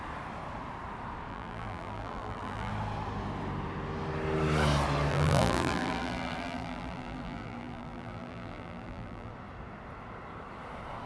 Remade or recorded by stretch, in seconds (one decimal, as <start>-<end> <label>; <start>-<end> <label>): 0.0-1.3 recorded; 1.3-2.7 remade; 2.7-5.1 recorded; 5.1-9.3 remade; 9.3-11.1 recorded